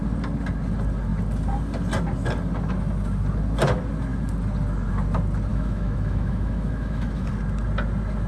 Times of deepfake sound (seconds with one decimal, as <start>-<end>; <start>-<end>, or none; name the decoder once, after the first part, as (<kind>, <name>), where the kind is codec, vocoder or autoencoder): 5.5-7.3 (autoencoder, DAC-VAE)

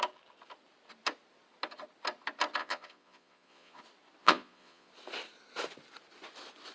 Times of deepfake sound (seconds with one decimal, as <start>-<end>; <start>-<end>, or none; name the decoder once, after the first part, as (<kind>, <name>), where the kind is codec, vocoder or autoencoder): 2.6-3.8 (vocoder, Vocos); 4.2-4.9

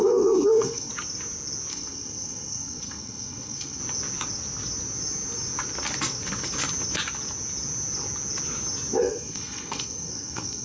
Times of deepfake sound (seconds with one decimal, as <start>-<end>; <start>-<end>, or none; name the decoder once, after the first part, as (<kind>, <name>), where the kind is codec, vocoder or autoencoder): 0.0-0.9 (codec, SNAC); 1.7-3.8; 9.0-10.6

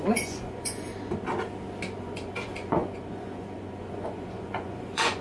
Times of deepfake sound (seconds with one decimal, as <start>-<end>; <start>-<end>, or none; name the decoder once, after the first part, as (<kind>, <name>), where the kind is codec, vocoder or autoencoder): 0.0-0.9 (vocoder, Vocos); 2.0-5.2

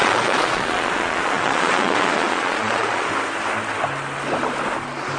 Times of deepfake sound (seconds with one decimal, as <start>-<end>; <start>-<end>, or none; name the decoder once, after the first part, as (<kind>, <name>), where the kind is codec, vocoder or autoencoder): 0.0-3.1 (vocoder, Vocos)

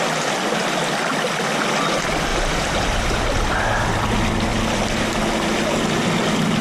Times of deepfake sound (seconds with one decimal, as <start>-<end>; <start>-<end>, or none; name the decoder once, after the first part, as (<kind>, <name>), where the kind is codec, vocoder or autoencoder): 2.3-3.5 (vocoder, BigVGAN v2)